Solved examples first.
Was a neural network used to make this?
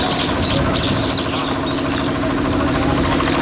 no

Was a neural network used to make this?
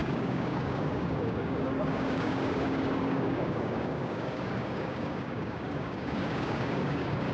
yes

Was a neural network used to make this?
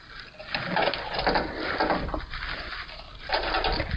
no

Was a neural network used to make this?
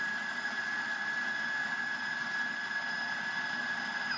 no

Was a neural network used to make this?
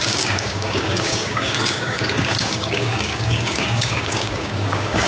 yes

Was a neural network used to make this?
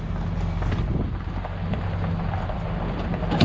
no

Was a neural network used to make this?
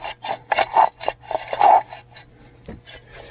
no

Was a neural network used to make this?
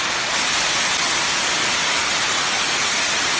no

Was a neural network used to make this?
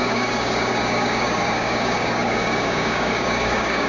yes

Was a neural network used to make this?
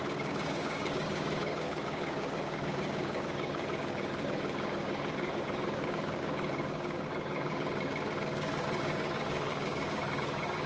yes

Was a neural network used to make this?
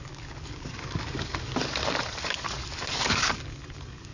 yes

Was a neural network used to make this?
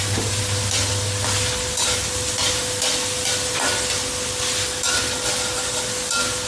no